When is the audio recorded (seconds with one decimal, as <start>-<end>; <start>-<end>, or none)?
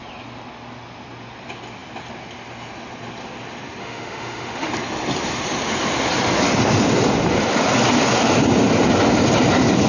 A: 0.0-3.8; 4.7-9.9